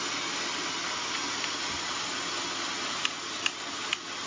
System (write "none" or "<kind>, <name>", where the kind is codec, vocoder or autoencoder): none